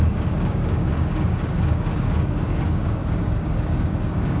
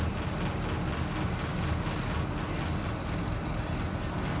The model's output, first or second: first